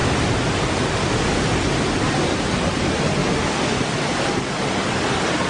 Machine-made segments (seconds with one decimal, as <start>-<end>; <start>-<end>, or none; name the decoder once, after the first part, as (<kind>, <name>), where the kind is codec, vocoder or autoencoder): 0.0-2.4 (vocoder, BigVGAN v2); 3.2-4.5